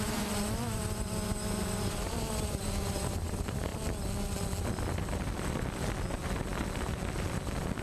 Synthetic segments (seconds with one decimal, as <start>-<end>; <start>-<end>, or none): 0.0-3.7